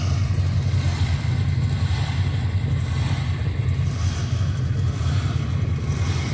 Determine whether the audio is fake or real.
real